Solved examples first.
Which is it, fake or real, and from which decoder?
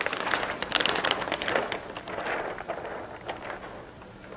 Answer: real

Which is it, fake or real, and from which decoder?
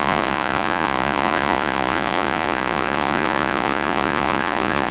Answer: fake, vocoder, Vocos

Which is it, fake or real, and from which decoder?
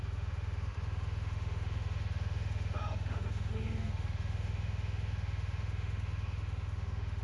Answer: fake, autoencoder, DAC-VAE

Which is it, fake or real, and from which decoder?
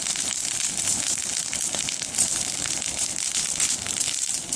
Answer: real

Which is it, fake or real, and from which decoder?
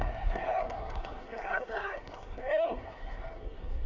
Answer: fake, codec, SNAC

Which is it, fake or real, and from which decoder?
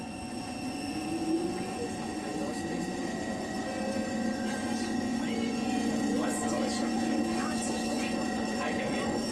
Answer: fake, vocoder, Vocos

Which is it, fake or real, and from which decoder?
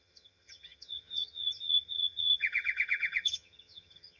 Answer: fake, vocoder, HiFi-GAN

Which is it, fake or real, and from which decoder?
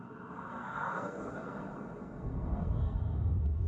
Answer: fake, codec, SNAC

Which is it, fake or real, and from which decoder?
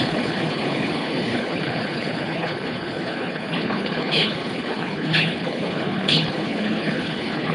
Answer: fake, codec, HILCodec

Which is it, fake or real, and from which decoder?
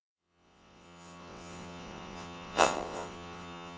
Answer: fake, vocoder, WaveNeXt